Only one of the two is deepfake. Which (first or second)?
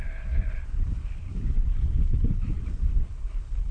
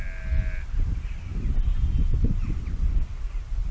first